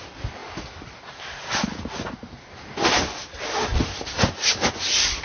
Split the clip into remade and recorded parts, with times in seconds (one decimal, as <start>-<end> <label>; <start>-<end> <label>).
0.0-5.2 recorded